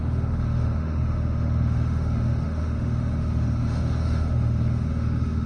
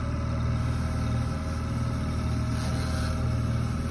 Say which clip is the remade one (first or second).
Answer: first